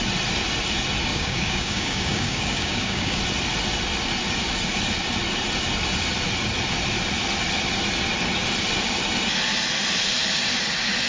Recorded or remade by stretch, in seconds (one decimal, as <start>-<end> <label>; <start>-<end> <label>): 0.0-1.1 recorded; 1.1-3.2 remade; 3.2-11.1 recorded